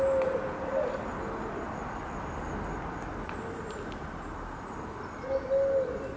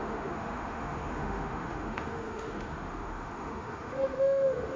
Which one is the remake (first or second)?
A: second